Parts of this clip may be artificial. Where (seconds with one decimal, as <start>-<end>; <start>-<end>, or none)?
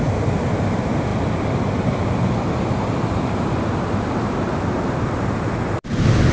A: none